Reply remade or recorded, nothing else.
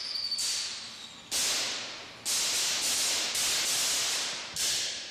recorded